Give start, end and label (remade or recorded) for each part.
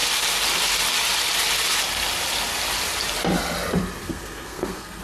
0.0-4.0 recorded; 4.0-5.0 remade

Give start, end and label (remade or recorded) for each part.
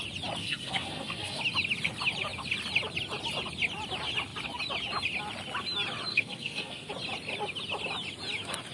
0.0-0.4 recorded; 0.4-1.4 remade; 1.4-6.1 recorded; 6.1-6.9 remade; 6.9-8.7 recorded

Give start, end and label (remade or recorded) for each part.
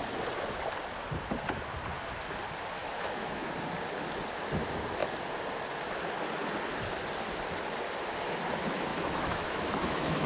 0.0-2.8 recorded; 2.8-3.5 remade; 3.5-8.9 recorded; 8.9-10.3 remade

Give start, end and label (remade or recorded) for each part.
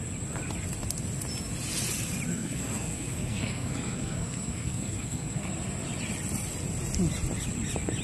0.0-2.3 recorded; 2.3-5.5 remade; 5.5-8.0 recorded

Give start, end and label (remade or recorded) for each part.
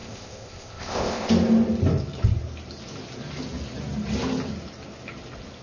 0.0-1.3 remade; 1.3-5.6 recorded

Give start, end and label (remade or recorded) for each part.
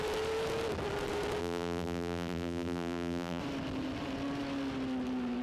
0.0-1.4 recorded; 1.4-3.4 remade; 3.4-5.4 recorded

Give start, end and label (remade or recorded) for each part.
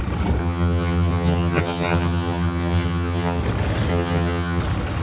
0.0-0.4 recorded; 0.4-3.4 remade; 3.4-3.9 recorded; 3.9-4.6 remade; 4.6-5.0 recorded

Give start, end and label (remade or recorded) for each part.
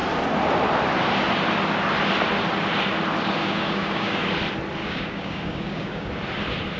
0.0-3.4 recorded; 3.4-4.3 remade; 4.3-4.8 recorded; 4.8-6.1 remade; 6.1-6.8 recorded